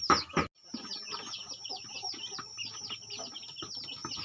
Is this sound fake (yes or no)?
no